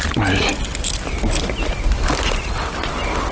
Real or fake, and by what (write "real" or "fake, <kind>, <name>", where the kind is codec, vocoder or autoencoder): real